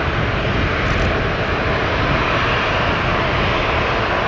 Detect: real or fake real